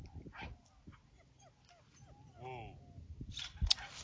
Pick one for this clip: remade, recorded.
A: recorded